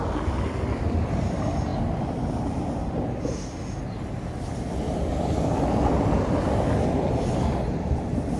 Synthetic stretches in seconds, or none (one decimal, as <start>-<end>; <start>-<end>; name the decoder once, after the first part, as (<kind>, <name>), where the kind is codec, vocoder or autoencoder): none